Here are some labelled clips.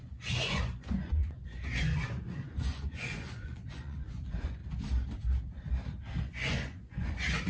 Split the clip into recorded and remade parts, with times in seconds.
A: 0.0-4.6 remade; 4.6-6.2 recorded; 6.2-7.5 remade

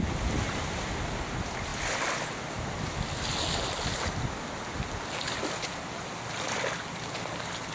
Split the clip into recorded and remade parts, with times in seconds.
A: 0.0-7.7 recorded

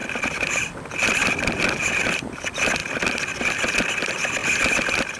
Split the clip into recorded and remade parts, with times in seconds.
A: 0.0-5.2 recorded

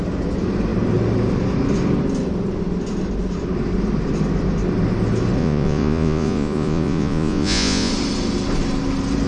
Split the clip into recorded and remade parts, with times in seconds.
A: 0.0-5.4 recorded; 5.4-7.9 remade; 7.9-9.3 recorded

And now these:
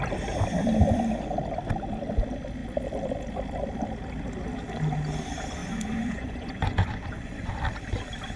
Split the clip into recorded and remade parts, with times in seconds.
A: 0.0-5.6 recorded; 5.6-7.5 remade; 7.5-8.4 recorded

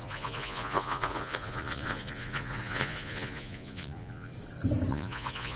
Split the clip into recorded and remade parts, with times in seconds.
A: 0.0-4.3 remade; 4.3-4.9 recorded; 4.9-5.6 remade

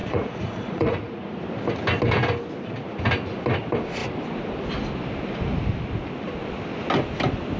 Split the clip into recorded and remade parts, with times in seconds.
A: 0.0-1.4 remade; 1.4-7.6 recorded

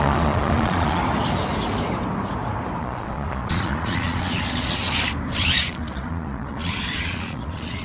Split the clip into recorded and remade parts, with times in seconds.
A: 0.0-1.0 remade; 1.0-2.8 recorded; 2.8-4.8 remade; 4.8-5.4 recorded; 5.4-7.8 remade